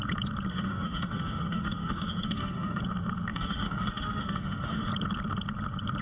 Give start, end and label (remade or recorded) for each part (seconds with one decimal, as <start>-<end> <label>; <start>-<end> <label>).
0.0-0.5 recorded; 0.5-2.8 remade; 2.8-3.3 recorded; 3.3-4.9 remade; 4.9-6.0 recorded

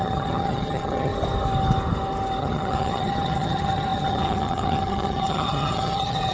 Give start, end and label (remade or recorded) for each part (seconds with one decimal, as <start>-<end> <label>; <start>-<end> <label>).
0.0-1.1 remade; 1.1-2.4 recorded; 2.4-6.3 remade

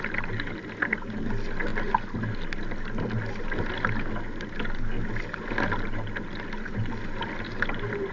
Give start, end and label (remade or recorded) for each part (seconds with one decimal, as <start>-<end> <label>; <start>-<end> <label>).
0.0-8.1 recorded